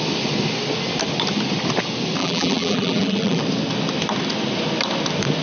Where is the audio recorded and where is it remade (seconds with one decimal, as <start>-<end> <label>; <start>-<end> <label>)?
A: 0.0-2.2 recorded; 2.2-3.4 remade; 3.4-5.4 recorded